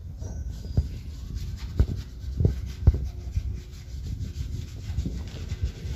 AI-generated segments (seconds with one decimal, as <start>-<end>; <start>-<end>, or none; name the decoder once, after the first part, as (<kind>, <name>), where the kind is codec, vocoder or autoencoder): none